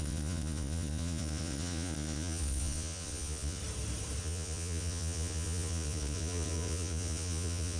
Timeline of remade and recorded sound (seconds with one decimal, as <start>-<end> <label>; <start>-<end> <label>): 0.0-3.6 remade; 3.6-4.2 recorded; 4.2-7.8 remade